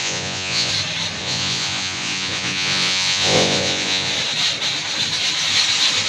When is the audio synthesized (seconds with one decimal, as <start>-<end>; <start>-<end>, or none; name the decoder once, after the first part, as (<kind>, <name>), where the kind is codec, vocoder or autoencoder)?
0.0-0.7 (vocoder, Vocos); 1.2-4.1

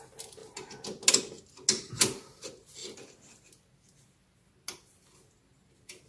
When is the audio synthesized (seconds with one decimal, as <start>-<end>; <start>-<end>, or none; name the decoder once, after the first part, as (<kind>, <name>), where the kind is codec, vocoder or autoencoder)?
2.8-3.4 (vocoder, BigVGAN v2)